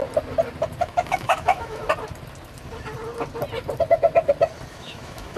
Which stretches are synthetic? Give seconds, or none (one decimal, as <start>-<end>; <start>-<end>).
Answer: 0.8-1.8; 4.7-5.4